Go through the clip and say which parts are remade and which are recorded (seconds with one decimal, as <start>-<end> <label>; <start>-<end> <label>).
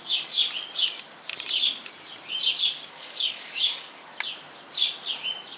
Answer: 0.0-0.4 remade; 0.4-2.9 recorded; 2.9-4.1 remade; 4.1-5.6 recorded